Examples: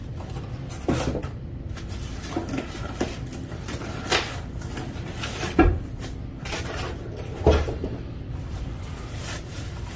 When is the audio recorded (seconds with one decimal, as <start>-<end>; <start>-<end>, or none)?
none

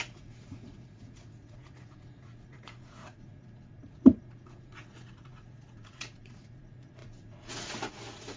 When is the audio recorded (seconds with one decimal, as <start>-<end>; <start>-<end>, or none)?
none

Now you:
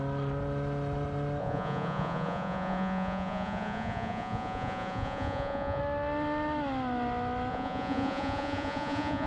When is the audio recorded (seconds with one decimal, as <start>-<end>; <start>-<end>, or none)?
0.0-1.4; 5.8-7.5